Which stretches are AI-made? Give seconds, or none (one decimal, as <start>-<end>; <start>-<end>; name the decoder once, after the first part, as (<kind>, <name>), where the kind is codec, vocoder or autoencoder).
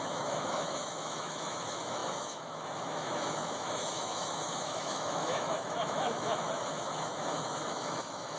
0.0-8.4 (autoencoder, DAC-VAE)